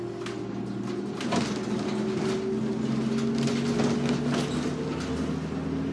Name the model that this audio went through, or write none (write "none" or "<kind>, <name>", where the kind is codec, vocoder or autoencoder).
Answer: none